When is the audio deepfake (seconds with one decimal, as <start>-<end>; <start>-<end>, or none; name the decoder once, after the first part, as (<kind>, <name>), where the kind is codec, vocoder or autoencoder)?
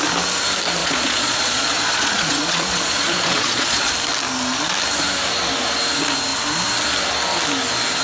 0.8-3.9 (vocoder, Vocos)